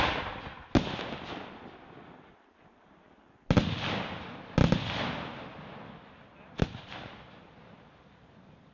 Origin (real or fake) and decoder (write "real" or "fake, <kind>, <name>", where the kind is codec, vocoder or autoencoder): real